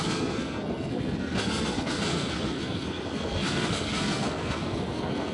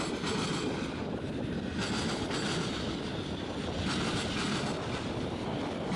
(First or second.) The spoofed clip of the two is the first